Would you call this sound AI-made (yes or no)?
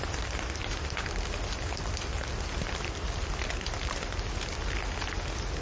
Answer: no